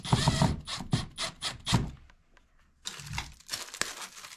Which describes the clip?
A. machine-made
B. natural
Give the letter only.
B